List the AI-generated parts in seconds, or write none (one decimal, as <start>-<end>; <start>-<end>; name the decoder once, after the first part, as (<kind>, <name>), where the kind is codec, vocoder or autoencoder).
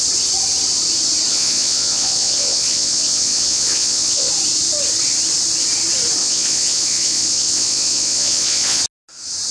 1.3-4.3 (vocoder, Vocos); 6.2-8.8